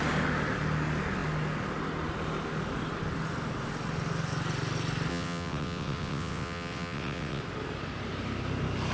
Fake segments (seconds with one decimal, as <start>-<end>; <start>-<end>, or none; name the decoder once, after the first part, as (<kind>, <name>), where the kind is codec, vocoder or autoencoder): 5.1-7.4 (vocoder, WaveNeXt)